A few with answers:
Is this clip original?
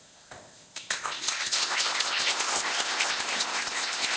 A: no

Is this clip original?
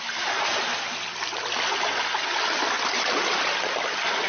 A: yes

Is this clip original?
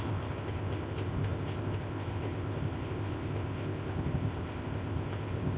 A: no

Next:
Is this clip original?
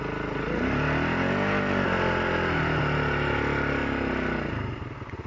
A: yes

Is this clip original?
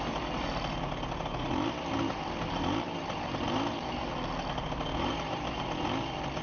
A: yes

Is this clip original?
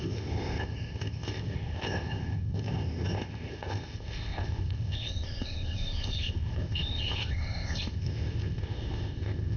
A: no